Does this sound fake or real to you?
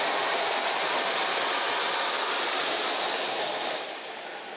real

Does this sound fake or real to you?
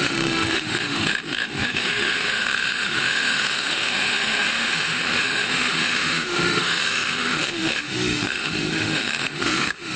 fake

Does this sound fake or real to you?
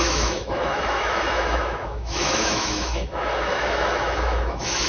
fake